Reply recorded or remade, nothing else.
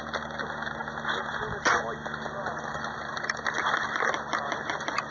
recorded